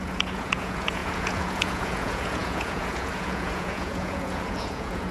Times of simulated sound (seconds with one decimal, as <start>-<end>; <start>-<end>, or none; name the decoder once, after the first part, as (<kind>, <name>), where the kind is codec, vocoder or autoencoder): 0.0-5.1 (vocoder, Vocos)